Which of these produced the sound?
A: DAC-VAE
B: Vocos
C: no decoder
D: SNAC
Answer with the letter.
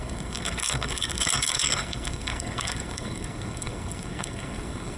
D